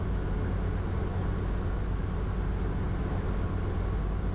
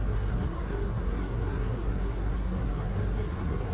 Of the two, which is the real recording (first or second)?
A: first